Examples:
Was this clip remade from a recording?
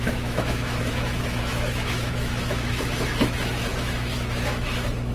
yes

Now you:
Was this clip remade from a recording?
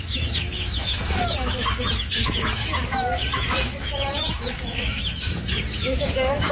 yes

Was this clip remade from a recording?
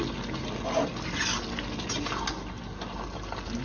no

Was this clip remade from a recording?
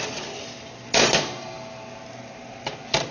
no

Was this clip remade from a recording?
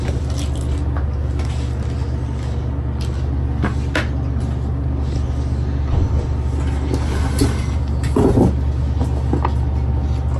no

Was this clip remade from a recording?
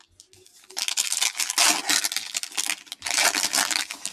no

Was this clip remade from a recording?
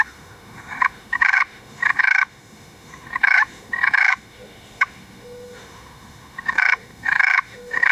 yes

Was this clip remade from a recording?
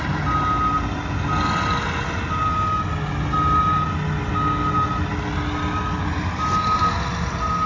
no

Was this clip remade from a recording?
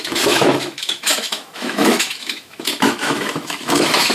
yes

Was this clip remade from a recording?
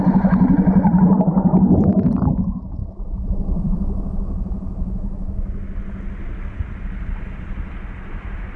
no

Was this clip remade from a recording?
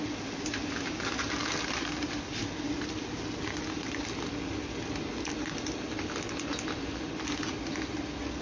no